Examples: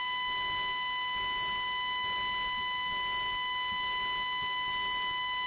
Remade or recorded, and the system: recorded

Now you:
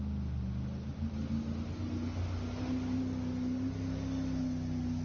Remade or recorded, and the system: recorded